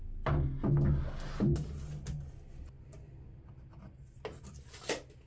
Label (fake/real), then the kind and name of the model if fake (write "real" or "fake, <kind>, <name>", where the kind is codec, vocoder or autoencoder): real